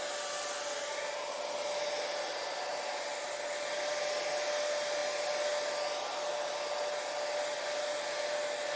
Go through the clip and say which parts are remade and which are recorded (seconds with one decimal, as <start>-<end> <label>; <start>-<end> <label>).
0.0-8.8 recorded